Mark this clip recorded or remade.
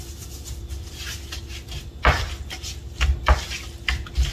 recorded